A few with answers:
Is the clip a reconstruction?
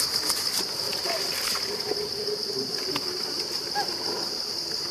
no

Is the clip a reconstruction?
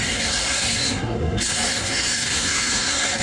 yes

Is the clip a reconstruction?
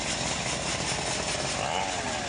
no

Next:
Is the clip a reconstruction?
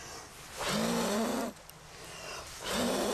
no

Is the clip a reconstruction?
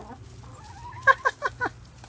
no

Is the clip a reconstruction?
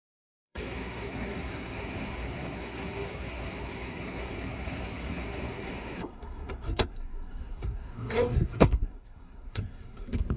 yes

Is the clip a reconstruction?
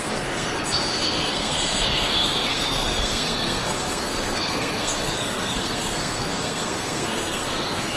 yes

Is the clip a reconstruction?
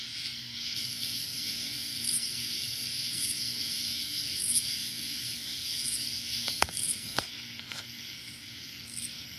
yes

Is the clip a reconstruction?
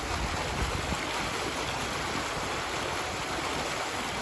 no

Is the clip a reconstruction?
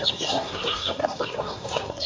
yes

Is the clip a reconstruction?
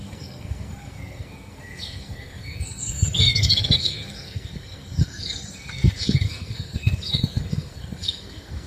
yes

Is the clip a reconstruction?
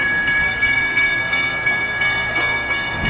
yes